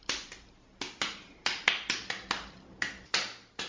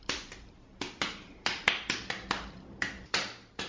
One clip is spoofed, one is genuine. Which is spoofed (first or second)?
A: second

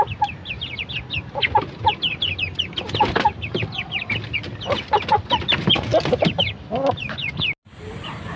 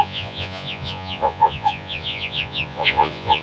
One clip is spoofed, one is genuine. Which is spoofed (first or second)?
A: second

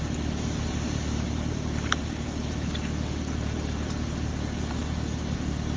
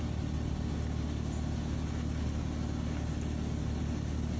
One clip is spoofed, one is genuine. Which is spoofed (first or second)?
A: first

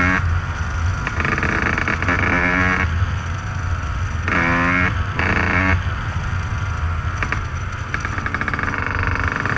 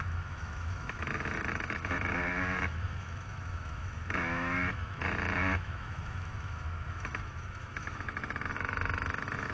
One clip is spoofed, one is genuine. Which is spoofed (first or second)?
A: second